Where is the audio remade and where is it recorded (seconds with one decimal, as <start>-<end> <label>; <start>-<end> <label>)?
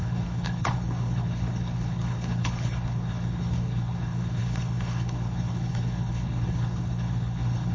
0.0-7.7 remade